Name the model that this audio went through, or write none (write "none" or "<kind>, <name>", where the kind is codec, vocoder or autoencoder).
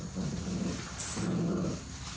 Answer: none